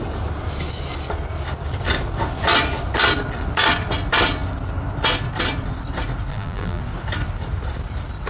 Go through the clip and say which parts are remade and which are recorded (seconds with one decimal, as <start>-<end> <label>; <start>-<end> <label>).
0.0-6.3 recorded; 6.3-6.8 remade; 6.8-8.3 recorded